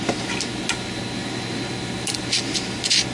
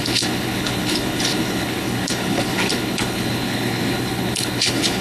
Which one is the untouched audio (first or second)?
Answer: first